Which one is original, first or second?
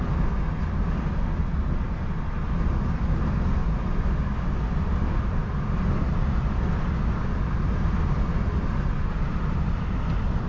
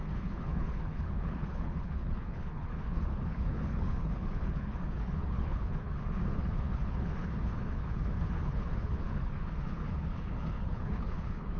first